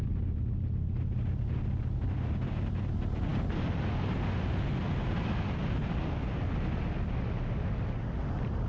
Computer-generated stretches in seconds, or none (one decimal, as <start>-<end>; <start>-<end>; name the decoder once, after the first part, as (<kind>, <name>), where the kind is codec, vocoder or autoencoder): none